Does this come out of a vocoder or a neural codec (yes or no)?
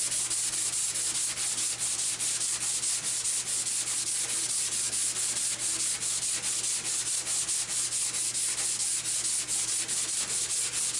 no